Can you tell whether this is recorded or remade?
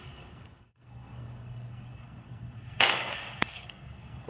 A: remade